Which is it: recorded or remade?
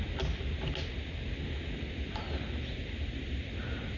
recorded